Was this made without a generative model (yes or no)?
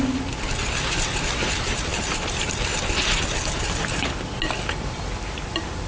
yes